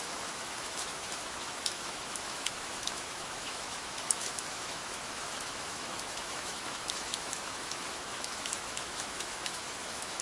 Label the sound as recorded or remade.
remade